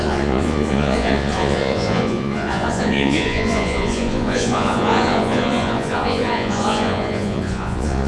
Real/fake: fake